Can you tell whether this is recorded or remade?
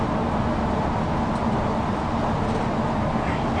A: recorded